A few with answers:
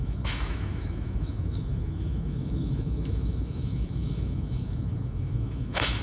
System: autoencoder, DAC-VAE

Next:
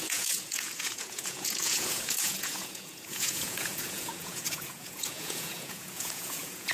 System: vocoder, Vocos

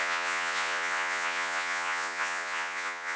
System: vocoder, Vocos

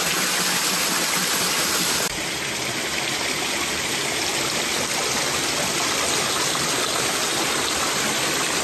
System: none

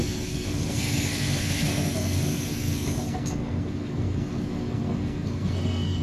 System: codec, SNAC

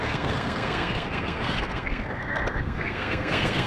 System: codec, SNAC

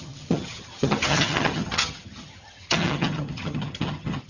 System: vocoder, HiFi-GAN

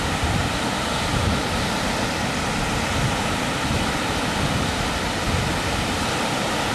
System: none